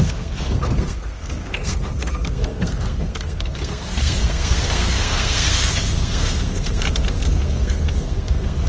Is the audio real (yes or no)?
no